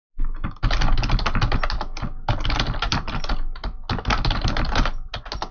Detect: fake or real real